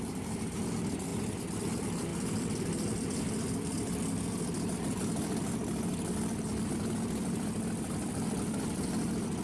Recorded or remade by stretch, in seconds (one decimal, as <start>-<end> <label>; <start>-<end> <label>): 0.0-9.4 recorded